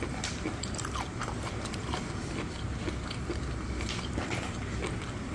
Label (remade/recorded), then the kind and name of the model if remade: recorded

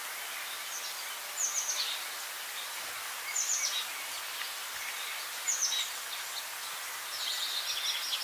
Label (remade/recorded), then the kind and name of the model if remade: recorded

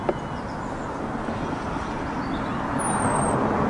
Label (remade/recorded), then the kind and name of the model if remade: recorded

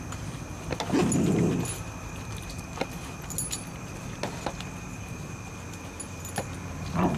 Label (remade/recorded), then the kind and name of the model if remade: recorded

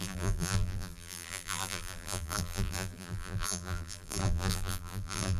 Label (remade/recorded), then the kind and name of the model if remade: remade, vocoder, BigVGAN v2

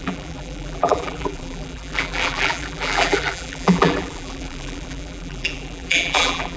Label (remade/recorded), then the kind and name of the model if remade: remade, vocoder, BigVGAN v2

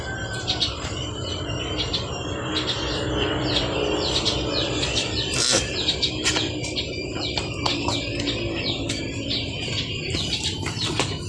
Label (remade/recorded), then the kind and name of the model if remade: remade, vocoder, BigVGAN v2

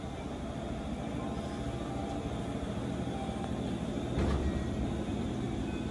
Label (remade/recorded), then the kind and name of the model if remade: recorded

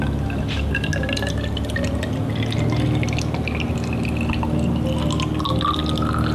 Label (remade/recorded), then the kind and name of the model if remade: recorded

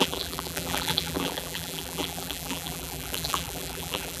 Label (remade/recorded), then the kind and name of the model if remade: remade, vocoder, BigVGAN v2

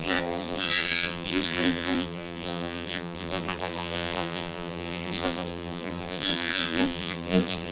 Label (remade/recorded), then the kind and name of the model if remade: remade, vocoder, BigVGAN v2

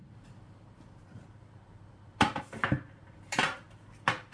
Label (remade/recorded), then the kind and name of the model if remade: remade, vocoder, BigVGAN v2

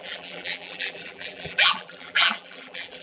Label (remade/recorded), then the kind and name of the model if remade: remade, vocoder, BigVGAN v2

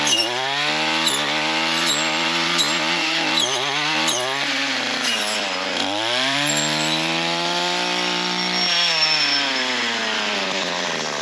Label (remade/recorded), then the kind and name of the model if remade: remade, vocoder, BigVGAN v2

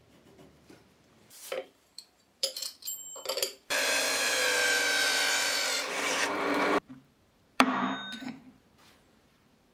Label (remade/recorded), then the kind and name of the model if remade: remade, vocoder, BigVGAN v2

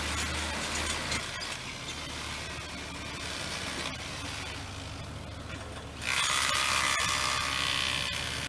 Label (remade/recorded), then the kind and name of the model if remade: recorded